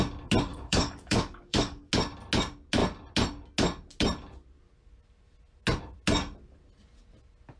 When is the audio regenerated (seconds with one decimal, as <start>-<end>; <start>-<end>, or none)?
0.5-1.9